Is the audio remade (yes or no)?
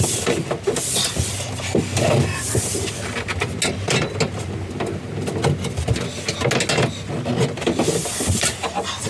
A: no